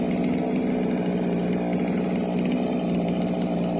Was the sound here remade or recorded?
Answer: recorded